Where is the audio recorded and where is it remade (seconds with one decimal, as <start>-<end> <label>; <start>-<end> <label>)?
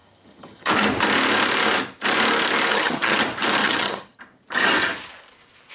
0.0-0.7 remade; 0.7-2.7 recorded; 2.7-3.2 remade; 3.2-3.6 recorded; 3.6-4.2 remade; 4.2-5.7 recorded